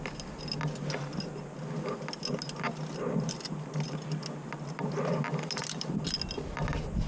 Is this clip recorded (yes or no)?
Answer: yes